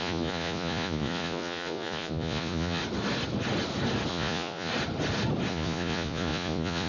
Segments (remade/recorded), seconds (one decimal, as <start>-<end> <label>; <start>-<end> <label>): 0.0-2.8 remade; 2.8-4.1 recorded; 4.1-4.7 remade; 4.7-5.5 recorded; 5.5-6.9 remade